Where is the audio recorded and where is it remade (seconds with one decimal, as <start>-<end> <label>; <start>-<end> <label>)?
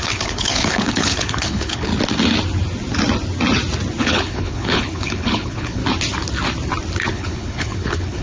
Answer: 0.0-1.9 remade; 1.9-4.0 recorded; 4.0-5.8 remade; 5.8-7.1 recorded; 7.1-8.2 remade